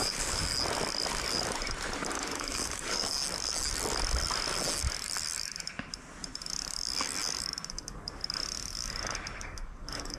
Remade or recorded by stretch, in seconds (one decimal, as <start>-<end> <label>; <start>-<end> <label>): 0.0-0.5 remade; 0.5-2.1 recorded; 2.1-3.2 remade; 3.2-7.7 recorded; 7.7-8.2 remade; 8.2-9.4 recorded; 9.4-10.2 remade

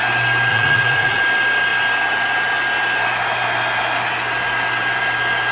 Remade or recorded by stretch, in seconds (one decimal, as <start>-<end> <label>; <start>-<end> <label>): 0.0-0.5 recorded; 0.5-1.2 remade; 1.2-5.5 recorded